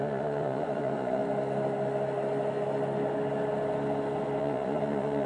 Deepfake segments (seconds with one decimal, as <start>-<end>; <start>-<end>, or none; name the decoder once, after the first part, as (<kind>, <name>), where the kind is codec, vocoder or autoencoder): 0.0-1.2 (vocoder, Vocos); 4.4-5.3